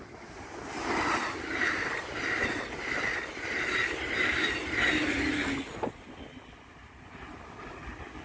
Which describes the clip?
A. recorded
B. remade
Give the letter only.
A